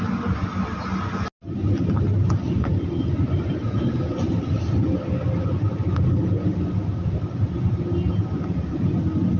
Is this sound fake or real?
real